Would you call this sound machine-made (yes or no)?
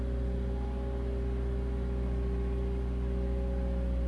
no